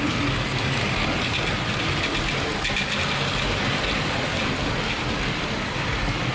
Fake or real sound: real